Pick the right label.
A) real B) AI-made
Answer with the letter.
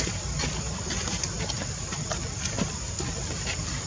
A